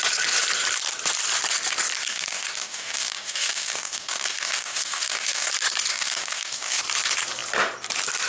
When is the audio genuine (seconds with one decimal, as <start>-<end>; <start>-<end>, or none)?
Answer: 0.0-2.0; 5.5-5.9; 6.8-8.3